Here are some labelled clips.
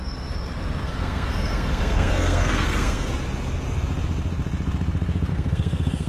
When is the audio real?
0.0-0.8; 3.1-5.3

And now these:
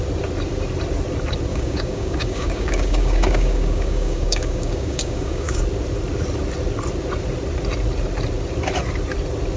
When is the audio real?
0.0-1.5; 5.6-9.6